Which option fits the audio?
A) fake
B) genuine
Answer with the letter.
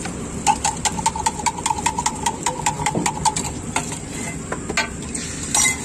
B